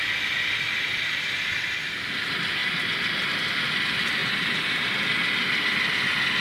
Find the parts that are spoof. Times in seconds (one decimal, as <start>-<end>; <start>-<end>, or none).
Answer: 0.9-1.5; 2.6-3.3; 4.2-4.9